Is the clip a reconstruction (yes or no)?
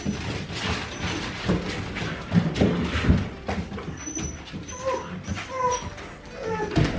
no